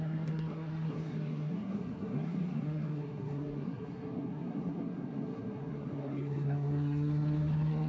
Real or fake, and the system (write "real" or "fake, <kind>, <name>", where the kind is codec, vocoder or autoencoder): fake, codec, SNAC